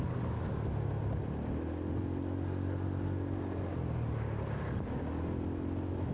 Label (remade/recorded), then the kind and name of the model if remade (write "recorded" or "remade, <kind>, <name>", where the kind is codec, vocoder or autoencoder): recorded